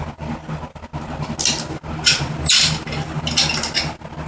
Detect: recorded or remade recorded